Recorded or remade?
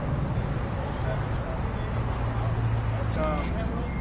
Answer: recorded